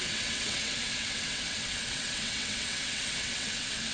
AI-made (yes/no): yes